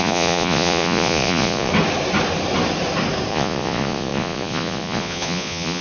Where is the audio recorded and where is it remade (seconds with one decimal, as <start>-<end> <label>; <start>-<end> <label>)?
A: 0.0-1.7 remade; 1.7-3.3 recorded; 3.3-5.8 remade